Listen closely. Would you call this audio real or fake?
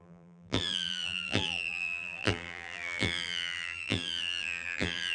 fake